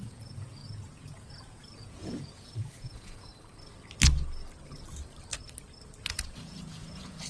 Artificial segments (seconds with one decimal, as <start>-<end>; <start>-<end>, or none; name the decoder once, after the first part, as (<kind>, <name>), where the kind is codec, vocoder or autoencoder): 0.0-3.3 (vocoder, Vocos); 6.0-7.3